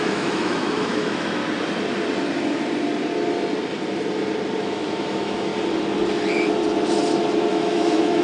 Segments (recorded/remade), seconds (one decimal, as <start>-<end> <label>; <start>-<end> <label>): 0.0-1.4 remade; 1.4-4.6 recorded; 4.6-5.5 remade; 5.5-7.5 recorded; 7.5-8.2 remade